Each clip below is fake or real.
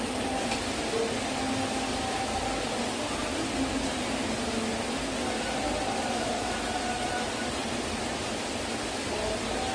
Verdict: real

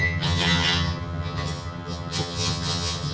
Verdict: fake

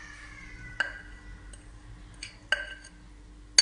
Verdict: real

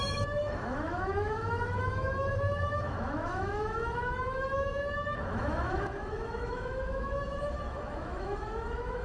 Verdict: fake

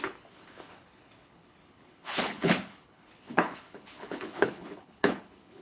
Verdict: fake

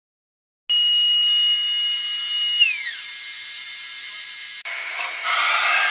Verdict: real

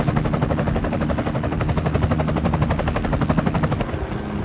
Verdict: real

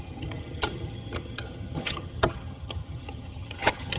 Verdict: fake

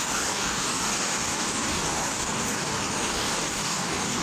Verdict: fake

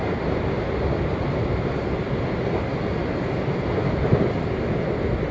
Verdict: real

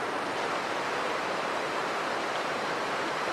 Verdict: fake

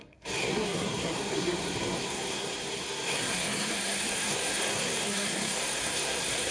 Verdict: fake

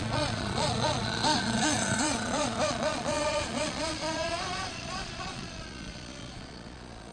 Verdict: fake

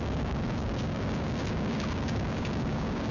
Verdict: fake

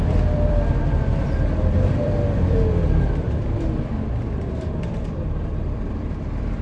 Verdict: fake